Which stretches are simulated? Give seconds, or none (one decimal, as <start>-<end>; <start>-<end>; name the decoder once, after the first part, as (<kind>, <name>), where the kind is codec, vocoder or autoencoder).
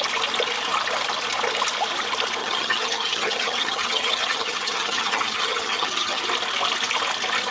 2.4-6.2 (vocoder, HiFi-GAN)